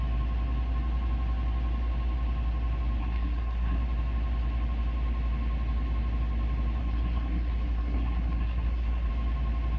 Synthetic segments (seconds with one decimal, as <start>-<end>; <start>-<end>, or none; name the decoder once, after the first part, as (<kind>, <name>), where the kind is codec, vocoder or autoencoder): 3.0-3.8 (codec, SNAC); 6.8-9.1